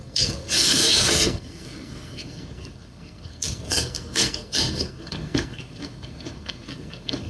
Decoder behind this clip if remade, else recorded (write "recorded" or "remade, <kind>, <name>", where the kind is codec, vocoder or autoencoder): remade, codec, SNAC